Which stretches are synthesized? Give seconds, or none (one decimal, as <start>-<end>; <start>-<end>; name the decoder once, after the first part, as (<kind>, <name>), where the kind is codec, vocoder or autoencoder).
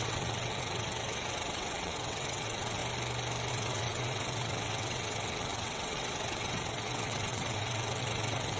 0.0-2.8 (vocoder, WaveNeXt); 3.5-8.6